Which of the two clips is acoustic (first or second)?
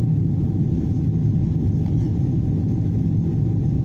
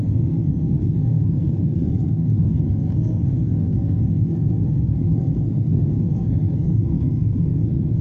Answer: first